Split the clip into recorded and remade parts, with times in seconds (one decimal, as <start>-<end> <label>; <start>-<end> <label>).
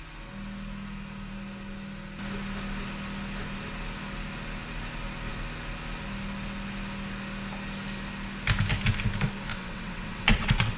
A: 0.0-9.5 recorded; 9.5-10.8 remade